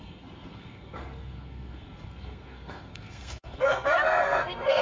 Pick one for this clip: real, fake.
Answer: fake